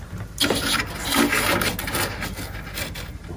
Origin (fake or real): real